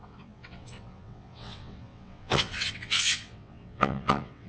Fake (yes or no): yes